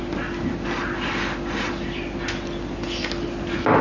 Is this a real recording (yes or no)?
yes